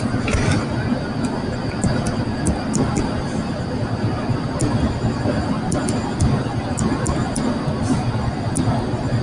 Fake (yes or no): no